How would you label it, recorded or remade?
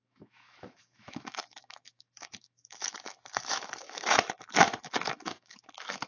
remade